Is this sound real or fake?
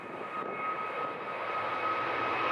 real